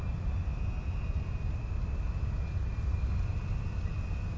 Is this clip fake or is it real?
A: real